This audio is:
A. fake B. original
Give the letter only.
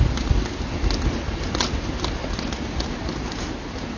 B